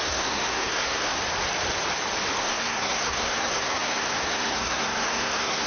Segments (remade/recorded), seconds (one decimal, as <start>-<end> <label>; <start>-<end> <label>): 0.0-1.2 remade; 1.2-2.4 recorded; 2.4-5.7 remade